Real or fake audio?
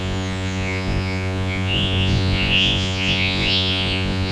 fake